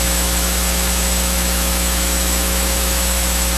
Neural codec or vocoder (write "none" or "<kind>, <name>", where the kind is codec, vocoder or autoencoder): autoencoder, DAC-VAE